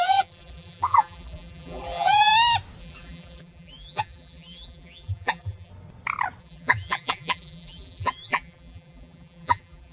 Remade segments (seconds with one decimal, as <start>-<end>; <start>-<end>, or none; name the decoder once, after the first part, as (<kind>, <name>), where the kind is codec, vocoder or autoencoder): 0.0-2.3 (vocoder, BigVGAN v2); 2.8-5.7; 6.4-9.9